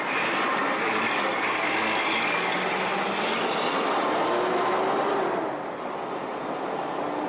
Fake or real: real